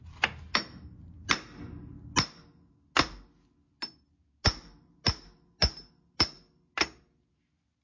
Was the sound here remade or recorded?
recorded